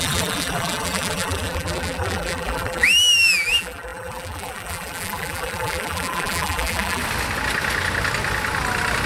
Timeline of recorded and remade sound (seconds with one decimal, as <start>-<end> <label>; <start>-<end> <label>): 0.0-7.0 remade; 7.0-9.1 recorded